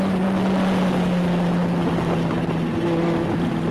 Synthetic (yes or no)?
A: no